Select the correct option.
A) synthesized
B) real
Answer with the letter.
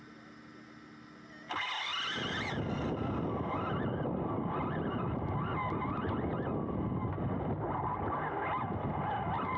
B